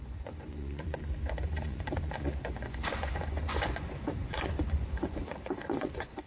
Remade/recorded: remade